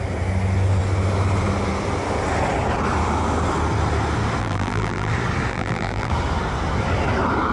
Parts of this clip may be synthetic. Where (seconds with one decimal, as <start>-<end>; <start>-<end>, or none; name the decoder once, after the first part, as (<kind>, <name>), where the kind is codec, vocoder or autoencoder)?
4.4-5.1 (vocoder, BigVGAN v2); 5.5-6.1